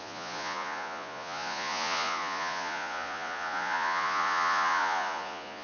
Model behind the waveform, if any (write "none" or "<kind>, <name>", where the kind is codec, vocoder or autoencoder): vocoder, Vocos